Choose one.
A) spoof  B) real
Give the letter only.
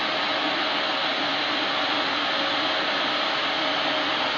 B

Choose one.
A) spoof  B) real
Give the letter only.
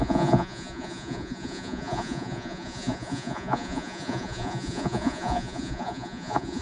A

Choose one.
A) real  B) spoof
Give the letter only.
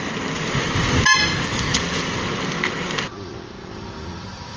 A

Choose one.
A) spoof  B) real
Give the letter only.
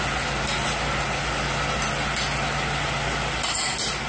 B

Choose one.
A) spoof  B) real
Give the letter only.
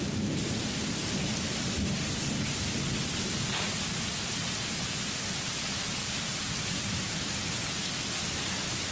B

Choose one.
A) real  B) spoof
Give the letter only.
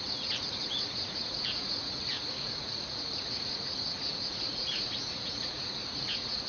B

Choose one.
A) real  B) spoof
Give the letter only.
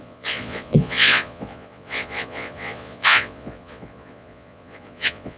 B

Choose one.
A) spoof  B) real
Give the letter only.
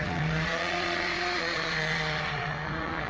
A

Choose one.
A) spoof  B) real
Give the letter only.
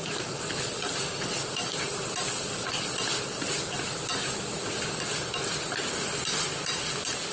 B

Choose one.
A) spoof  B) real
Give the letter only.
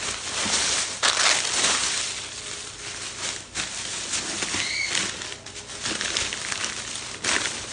B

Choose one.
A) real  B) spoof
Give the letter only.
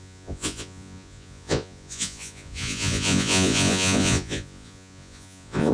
B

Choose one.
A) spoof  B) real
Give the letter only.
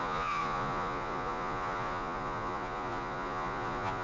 A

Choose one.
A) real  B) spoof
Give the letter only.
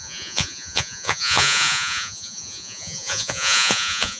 B